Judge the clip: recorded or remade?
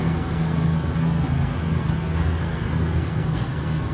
remade